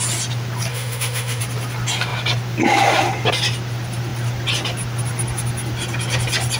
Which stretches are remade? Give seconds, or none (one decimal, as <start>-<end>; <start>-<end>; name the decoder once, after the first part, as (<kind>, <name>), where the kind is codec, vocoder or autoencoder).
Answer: 0.7-1.4 (autoencoder, DAC-VAE)

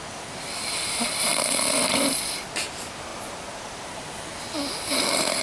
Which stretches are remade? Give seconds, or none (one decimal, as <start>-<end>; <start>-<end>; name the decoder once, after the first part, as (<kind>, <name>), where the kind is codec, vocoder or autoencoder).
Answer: 3.1-4.1 (vocoder, BigVGAN v2)

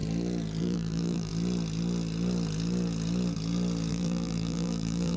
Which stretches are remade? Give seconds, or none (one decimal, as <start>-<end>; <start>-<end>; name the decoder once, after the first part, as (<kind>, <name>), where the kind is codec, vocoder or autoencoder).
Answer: 0.6-1.3 (vocoder, BigVGAN v2); 3.9-5.2

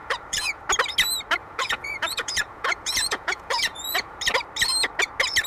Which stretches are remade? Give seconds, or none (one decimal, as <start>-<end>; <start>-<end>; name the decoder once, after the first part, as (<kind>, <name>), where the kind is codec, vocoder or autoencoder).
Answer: 0.0-0.6 (vocoder, Vocos); 1.4-4.2

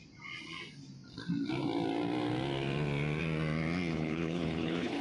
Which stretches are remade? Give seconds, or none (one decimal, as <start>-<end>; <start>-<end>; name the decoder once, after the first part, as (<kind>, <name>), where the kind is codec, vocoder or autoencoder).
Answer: 3.9-5.0 (codec, HILCodec)

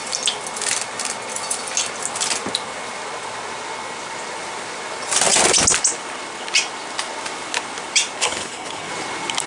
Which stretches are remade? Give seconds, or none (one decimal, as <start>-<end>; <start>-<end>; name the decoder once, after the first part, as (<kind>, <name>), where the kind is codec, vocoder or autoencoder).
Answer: 8.2-8.9 (codec, HILCodec)